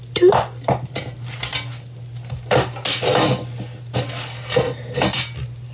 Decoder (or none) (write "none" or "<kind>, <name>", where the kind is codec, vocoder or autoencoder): none